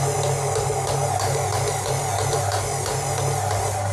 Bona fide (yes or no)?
yes